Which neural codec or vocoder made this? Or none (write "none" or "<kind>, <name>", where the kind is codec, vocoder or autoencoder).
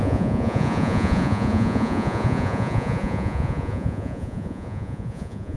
vocoder, Vocos